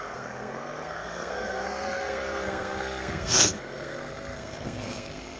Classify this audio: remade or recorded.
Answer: remade